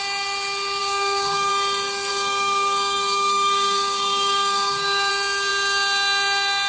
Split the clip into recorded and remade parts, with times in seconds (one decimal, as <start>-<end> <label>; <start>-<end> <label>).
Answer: 0.0-0.8 recorded; 0.8-1.5 remade; 1.5-2.1 recorded; 2.1-5.1 remade; 5.1-6.7 recorded